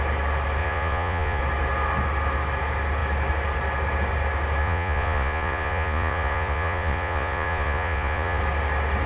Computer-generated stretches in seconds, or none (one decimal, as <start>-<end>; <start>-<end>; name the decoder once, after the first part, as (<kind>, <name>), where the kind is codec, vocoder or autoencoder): 0.6-1.4 (vocoder, Vocos); 4.6-8.4